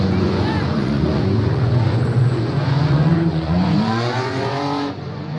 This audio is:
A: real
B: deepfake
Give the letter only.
B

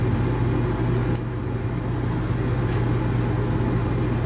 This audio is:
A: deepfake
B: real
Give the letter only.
B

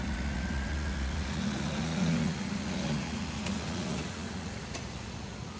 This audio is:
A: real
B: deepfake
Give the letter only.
B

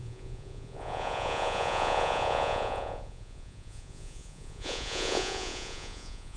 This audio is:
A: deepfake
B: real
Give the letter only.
A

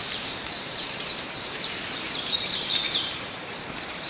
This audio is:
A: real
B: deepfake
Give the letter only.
B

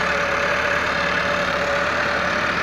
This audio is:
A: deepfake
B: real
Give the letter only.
A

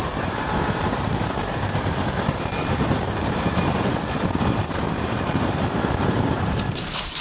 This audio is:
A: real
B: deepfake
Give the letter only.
B